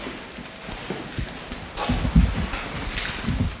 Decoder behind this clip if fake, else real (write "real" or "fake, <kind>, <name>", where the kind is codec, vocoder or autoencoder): real